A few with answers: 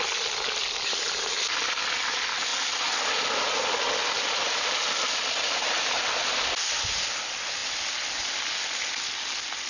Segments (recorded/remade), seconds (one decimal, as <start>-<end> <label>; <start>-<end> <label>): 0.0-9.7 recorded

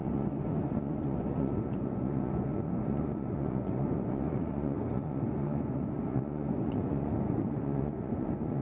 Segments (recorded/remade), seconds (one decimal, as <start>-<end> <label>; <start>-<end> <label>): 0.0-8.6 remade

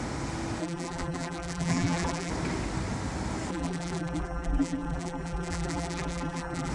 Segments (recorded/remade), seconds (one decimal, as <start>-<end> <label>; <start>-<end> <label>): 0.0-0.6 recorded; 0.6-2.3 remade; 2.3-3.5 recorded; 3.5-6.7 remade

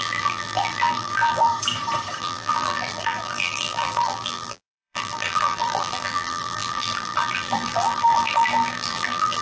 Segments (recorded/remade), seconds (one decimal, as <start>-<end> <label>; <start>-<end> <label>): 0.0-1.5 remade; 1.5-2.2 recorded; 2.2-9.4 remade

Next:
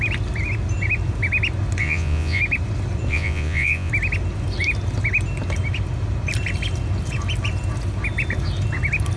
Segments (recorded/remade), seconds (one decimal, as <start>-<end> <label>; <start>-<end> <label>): 0.0-1.8 recorded; 1.8-2.4 remade; 2.4-3.1 recorded; 3.1-3.9 remade; 3.9-9.2 recorded